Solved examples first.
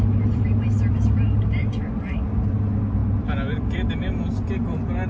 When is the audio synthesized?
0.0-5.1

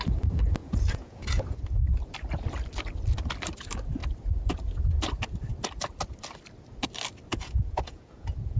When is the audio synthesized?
0.6-1.6; 7.3-8.6